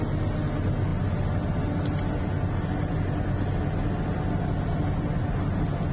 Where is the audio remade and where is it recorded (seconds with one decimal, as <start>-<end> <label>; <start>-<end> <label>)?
0.0-5.9 recorded